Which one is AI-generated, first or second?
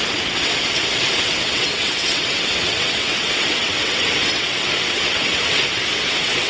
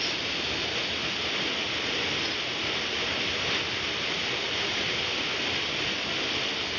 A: first